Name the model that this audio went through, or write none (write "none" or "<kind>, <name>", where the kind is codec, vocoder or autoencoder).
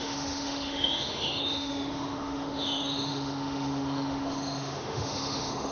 autoencoder, DAC-VAE